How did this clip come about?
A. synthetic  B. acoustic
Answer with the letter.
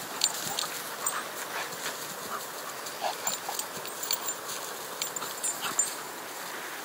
B